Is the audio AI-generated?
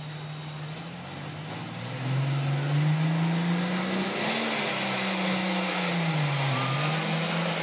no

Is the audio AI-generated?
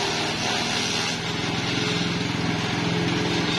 no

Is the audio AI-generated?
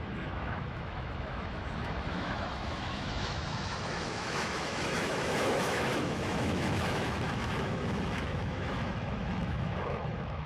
yes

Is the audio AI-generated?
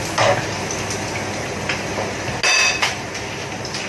no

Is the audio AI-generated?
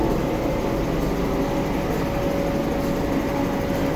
no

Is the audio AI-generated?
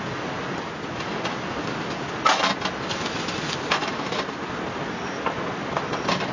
no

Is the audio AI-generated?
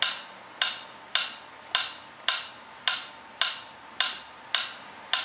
no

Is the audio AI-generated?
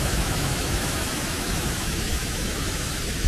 yes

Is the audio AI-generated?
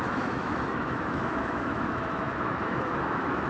yes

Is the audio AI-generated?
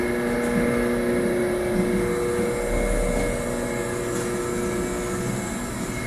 no